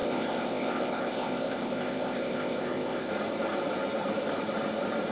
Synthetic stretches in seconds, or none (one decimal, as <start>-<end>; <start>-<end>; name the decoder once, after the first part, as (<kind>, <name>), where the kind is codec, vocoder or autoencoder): 0.0-3.1 (codec, ZipCodec)

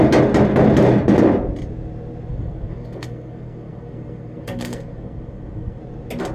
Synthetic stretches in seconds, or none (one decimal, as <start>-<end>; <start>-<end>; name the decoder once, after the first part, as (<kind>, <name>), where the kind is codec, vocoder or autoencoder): 2.3-5.8 (codec, SNAC)

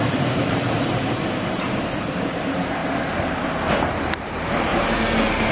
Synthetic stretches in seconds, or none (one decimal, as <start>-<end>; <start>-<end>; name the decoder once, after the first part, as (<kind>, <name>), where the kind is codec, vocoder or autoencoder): 0.0-2.8 (vocoder, BigVGAN v2); 3.9-4.7

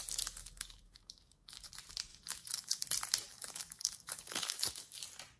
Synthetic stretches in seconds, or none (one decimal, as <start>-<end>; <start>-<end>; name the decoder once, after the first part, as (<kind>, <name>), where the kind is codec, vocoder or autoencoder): 0.4-1.7 (codec, DAC); 2.1-2.8; 3.3-5.0

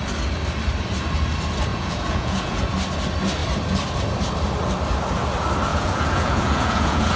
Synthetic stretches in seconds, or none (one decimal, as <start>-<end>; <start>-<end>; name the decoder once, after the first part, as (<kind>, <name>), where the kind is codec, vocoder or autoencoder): 1.7-2.7 (vocoder, Vocos); 5.7-7.2

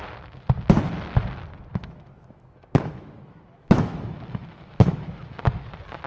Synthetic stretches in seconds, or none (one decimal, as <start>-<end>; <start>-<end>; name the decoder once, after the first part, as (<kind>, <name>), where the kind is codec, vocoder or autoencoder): 1.7-5.4 (autoencoder, DAC-VAE)

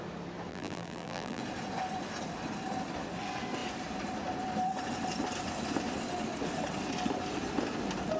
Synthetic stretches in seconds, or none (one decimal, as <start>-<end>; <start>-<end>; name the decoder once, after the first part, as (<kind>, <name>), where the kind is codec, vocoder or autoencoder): 0.5-1.4 (vocoder, BigVGAN v2)